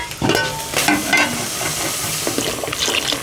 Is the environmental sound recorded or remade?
recorded